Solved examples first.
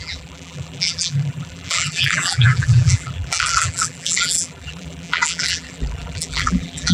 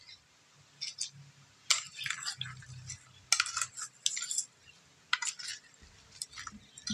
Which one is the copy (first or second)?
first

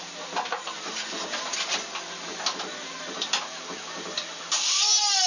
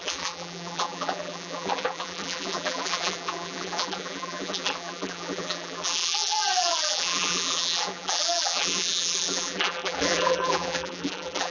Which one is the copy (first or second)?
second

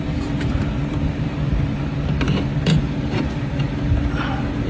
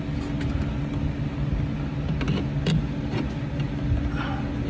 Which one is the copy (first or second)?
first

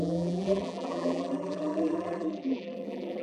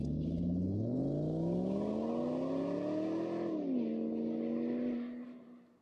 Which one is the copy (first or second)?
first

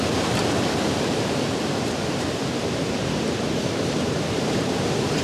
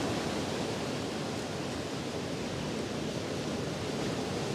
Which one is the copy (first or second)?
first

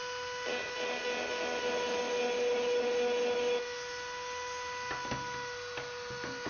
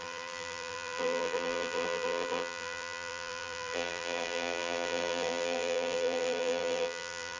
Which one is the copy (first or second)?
second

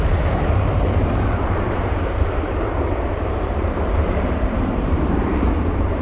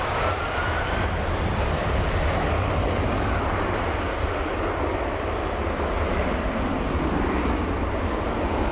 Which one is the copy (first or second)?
first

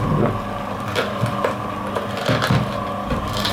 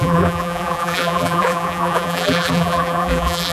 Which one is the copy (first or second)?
second